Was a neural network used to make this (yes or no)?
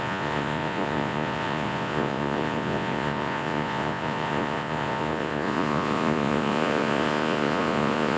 yes